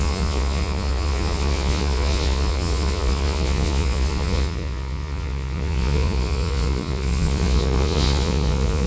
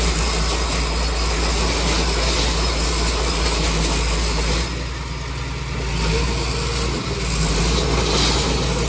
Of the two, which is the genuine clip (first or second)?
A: second